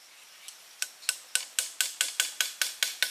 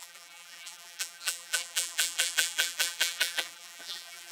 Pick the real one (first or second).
first